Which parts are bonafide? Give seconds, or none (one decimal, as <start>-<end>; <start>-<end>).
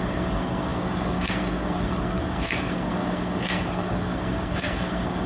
none